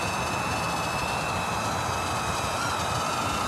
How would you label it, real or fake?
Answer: real